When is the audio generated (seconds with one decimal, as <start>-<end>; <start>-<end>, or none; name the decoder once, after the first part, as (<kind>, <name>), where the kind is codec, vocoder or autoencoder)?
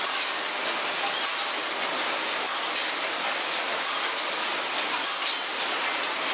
none